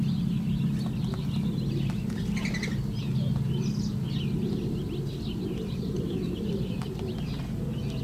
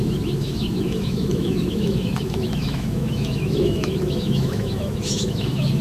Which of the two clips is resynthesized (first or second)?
second